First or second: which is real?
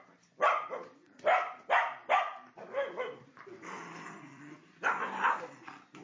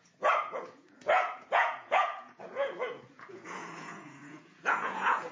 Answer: first